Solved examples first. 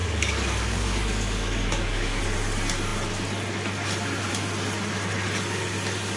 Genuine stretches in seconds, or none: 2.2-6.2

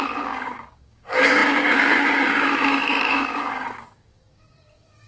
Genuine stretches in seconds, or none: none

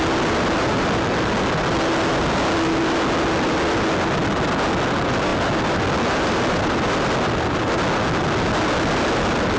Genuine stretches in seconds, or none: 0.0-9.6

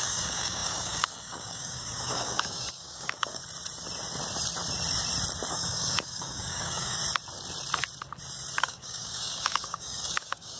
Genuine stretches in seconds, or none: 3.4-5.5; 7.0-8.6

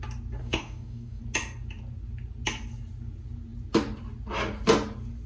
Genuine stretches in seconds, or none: 0.0-0.4; 1.2-5.3

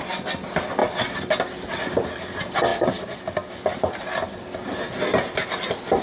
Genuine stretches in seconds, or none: 0.0-6.0